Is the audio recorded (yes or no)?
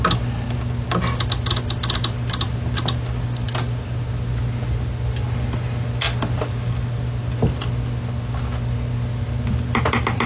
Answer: yes